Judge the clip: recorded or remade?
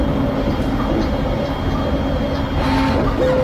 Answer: recorded